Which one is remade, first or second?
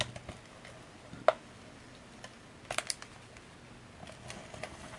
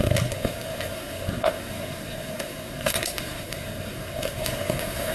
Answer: second